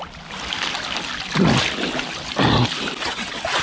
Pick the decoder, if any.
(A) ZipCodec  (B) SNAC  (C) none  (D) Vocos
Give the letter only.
C